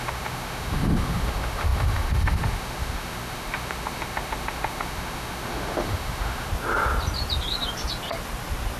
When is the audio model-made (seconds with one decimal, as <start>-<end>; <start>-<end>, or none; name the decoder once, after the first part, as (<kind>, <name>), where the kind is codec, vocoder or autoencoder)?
0.0-6.5 (autoencoder, DAC-VAE)